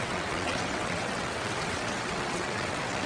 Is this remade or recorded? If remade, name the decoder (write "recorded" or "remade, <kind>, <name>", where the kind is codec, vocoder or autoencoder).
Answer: remade, vocoder, WaveNeXt